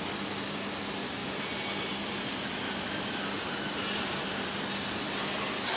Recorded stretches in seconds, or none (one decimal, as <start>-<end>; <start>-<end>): 0.0-5.8